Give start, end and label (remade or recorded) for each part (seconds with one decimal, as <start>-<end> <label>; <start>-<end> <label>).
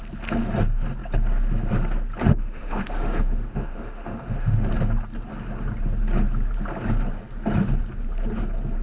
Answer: 0.0-2.3 recorded; 2.3-4.7 remade; 4.7-8.8 recorded